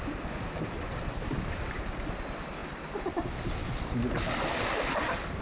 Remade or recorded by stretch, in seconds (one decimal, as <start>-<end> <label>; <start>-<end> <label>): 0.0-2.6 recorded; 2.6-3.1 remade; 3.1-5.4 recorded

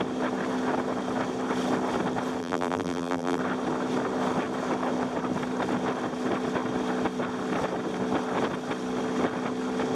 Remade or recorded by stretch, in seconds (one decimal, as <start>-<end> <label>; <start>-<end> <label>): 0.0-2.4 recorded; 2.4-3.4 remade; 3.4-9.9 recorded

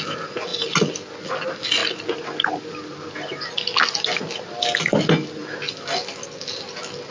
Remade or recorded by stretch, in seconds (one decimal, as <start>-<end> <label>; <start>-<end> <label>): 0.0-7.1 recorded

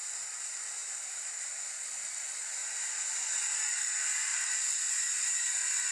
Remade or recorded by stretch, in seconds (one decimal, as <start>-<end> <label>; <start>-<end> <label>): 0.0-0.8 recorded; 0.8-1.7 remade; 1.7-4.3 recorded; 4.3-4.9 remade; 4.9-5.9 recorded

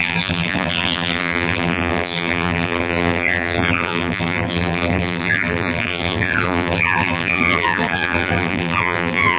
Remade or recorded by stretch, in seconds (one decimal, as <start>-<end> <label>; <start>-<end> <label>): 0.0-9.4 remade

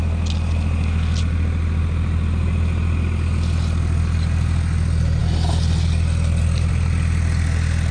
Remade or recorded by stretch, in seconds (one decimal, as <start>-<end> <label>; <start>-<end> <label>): 0.0-7.9 recorded

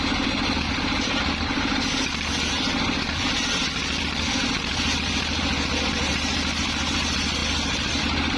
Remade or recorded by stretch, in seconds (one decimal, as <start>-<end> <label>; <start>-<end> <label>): 0.0-7.4 recorded; 7.4-8.0 remade; 8.0-8.4 recorded

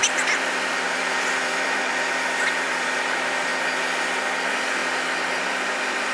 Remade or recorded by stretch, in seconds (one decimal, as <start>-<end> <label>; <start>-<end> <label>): 0.0-3.5 remade; 3.5-4.3 recorded; 4.3-4.8 remade; 4.8-5.4 recorded; 5.4-6.1 remade